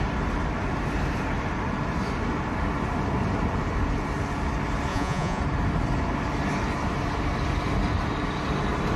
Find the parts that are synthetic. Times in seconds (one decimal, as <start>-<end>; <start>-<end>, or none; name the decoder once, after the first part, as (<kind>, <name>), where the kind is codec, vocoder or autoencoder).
4.9-5.4 (vocoder, Vocos)